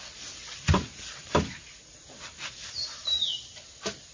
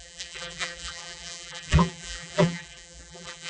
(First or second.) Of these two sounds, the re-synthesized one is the second